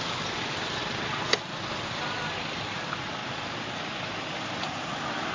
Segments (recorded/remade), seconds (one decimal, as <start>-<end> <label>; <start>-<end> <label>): 0.0-5.3 recorded